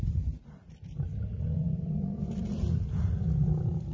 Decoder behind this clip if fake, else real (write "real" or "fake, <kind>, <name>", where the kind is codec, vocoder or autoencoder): real